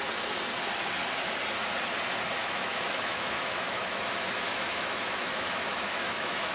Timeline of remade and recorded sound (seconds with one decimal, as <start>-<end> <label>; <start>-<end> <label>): 0.0-2.4 recorded; 2.4-6.5 remade